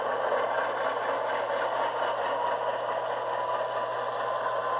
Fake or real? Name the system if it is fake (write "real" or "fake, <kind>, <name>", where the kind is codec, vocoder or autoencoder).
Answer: real